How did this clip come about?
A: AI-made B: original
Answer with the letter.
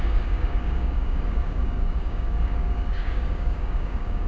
A